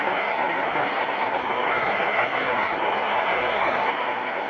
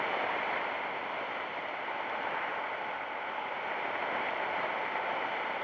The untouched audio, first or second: second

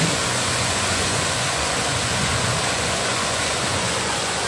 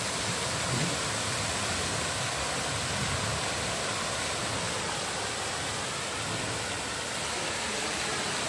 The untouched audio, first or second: second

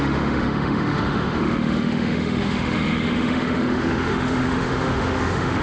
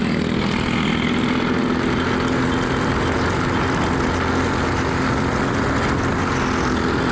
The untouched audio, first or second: second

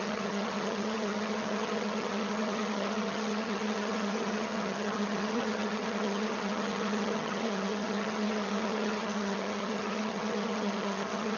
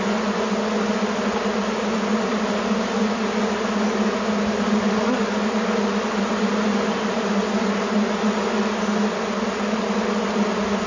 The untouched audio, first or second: second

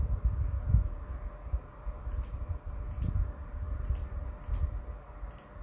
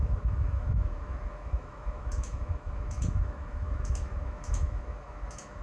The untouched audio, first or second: first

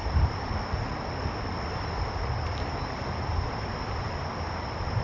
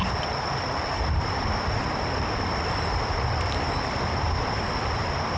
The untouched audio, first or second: first